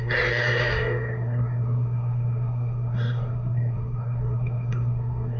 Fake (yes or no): yes